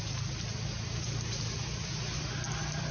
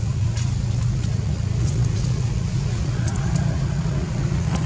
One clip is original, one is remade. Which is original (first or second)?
first